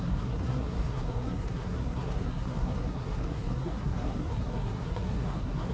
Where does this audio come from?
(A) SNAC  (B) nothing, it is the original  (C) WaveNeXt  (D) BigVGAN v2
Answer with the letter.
A